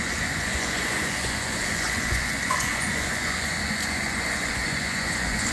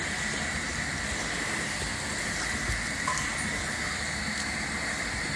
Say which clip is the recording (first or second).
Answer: second